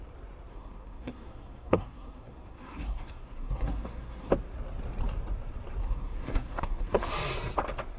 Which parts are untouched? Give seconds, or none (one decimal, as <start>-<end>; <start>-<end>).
0.0-0.5; 4.3-5.8; 7.1-8.0